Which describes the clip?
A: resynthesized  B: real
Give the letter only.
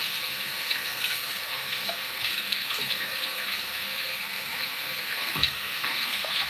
A